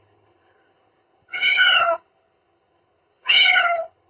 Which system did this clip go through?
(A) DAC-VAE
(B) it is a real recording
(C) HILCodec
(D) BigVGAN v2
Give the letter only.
C